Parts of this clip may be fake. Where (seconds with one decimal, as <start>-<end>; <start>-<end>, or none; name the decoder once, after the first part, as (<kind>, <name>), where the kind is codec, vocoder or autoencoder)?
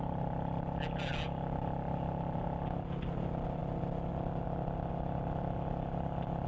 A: none